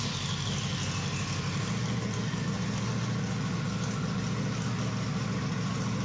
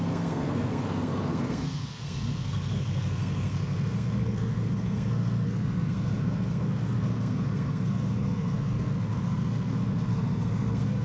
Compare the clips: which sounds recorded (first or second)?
first